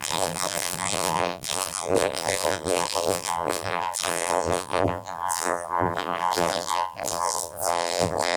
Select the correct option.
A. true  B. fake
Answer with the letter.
B